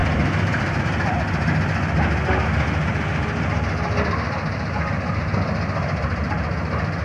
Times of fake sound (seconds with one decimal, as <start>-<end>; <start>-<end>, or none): 0.0-0.8